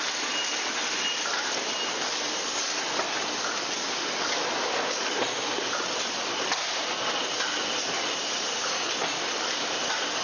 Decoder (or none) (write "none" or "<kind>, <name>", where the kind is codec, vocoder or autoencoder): none